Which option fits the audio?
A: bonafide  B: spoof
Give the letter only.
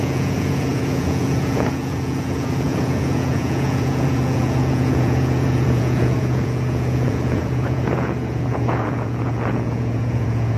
B